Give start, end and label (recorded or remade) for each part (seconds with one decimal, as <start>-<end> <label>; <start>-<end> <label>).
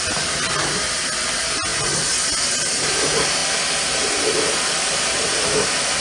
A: 0.0-6.0 recorded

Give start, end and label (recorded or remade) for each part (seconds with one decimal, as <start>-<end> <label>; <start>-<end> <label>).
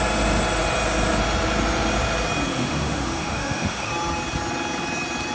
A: 0.0-2.5 recorded; 2.5-3.9 remade; 3.9-5.3 recorded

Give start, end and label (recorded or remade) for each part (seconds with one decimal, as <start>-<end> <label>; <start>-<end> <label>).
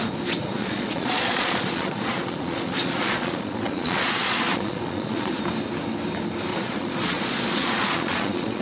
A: 0.0-0.4 recorded; 0.4-5.4 remade; 5.4-6.5 recorded; 6.5-8.6 remade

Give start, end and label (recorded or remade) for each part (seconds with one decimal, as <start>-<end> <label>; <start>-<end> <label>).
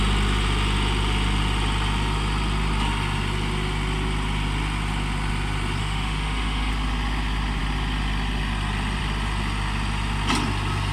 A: 0.0-5.8 recorded; 5.8-6.7 remade; 6.7-10.9 recorded